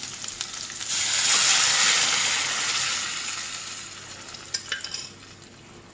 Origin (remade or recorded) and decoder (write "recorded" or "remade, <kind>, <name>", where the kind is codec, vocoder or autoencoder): recorded